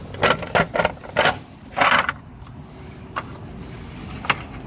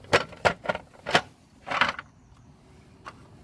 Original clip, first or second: first